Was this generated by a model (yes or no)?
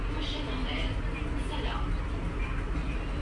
no